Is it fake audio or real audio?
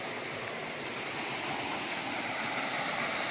real